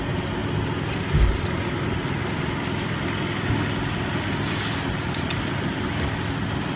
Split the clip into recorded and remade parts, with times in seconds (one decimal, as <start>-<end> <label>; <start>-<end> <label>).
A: 0.0-6.8 recorded